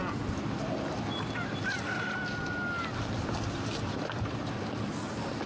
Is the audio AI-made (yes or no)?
no